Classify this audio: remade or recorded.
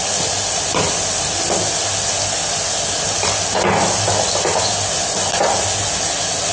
recorded